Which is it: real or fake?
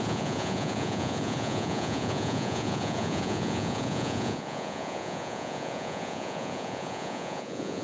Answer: fake